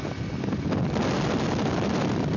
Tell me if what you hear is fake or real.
real